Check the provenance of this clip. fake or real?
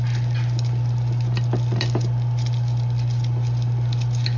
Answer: real